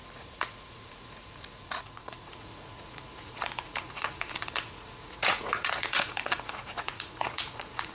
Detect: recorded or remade remade